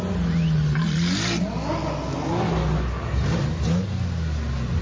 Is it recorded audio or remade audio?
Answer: recorded